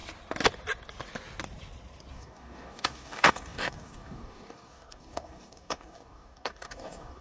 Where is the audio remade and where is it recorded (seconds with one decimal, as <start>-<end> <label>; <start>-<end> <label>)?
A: 0.0-2.1 recorded; 2.1-7.2 remade